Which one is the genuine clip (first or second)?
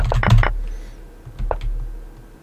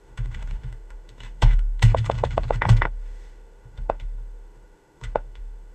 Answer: first